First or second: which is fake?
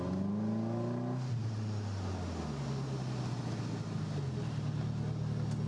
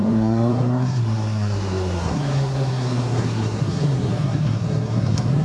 second